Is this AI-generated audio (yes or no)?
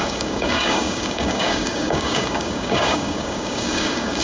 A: yes